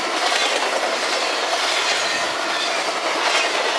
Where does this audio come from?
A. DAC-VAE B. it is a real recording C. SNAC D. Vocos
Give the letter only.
B